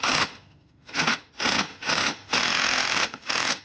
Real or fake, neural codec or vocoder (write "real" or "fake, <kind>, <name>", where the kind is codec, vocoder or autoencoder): fake, autoencoder, DAC-VAE